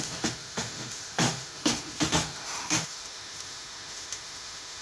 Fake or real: fake